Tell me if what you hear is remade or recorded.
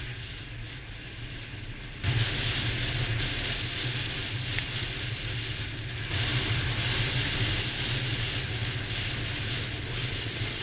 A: recorded